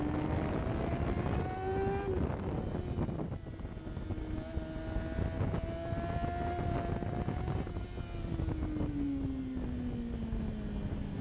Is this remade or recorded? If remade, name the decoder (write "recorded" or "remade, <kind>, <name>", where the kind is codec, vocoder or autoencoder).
recorded